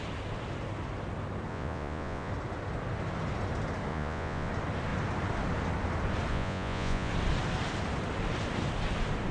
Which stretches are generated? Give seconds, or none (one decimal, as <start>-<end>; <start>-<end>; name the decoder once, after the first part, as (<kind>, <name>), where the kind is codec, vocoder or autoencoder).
1.5-2.3 (vocoder, Vocos); 3.9-4.5; 6.3-7.1